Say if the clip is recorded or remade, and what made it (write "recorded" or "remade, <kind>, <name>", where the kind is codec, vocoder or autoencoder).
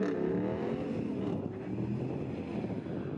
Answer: recorded